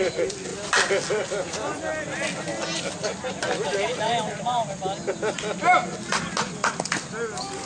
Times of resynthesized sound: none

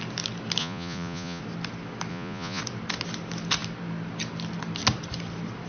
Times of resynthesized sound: 0.6-1.4 (vocoder, Vocos); 2.1-2.6

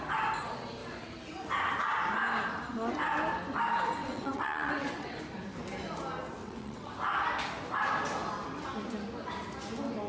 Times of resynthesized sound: 4.0-5.2 (vocoder, WaveNeXt); 6.4-6.9

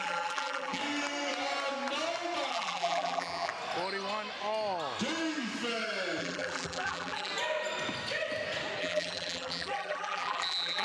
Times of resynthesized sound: 0.0-0.8 (vocoder, BigVGAN v2); 2.5-3.5; 6.2-7.3; 8.8-10.8

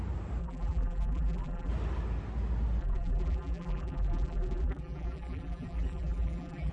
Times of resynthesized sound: 0.4-1.7 (vocoder, BigVGAN v2); 2.8-6.7